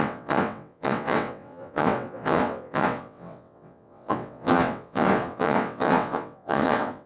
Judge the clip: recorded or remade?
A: remade